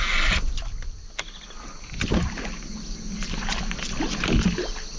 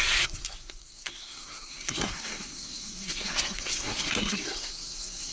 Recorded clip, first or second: first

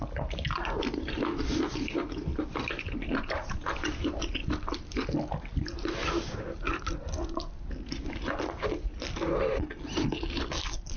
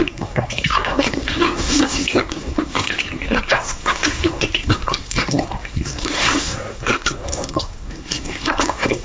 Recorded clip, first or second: first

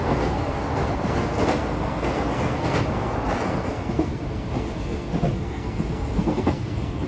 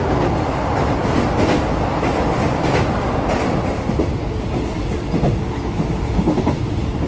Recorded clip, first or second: second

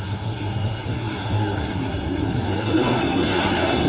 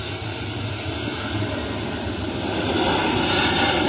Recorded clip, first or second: second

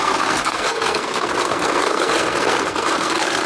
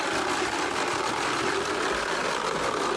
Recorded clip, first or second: second